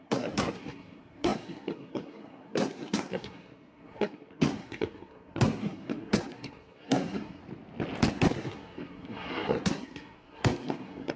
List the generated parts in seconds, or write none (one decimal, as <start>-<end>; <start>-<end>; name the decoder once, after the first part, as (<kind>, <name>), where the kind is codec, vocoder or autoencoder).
0.0-7.4 (codec, SNAC); 8.1-11.2